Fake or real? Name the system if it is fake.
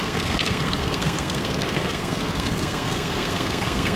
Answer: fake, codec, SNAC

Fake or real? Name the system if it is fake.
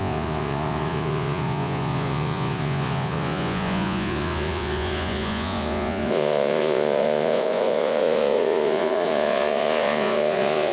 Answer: fake, vocoder, Vocos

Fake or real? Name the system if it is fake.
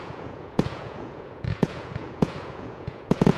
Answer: fake, vocoder, Vocos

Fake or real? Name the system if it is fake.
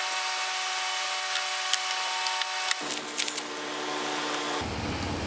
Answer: real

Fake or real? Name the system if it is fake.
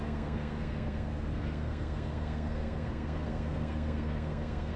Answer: fake, codec, SNAC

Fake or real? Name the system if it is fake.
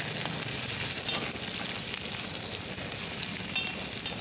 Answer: real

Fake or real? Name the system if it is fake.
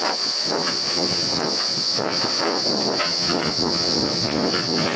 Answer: fake, vocoder, Vocos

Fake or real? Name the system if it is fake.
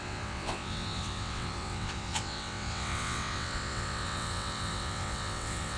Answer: fake, vocoder, WaveNeXt